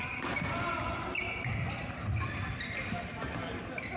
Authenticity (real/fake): real